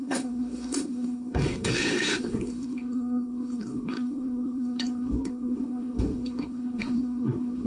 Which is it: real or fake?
fake